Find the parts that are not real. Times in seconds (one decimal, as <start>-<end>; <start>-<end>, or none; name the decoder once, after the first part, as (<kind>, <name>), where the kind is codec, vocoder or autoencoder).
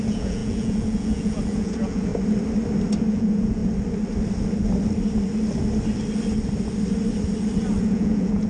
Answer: 0.0-2.1 (vocoder, Vocos); 3.1-3.6; 7.8-8.5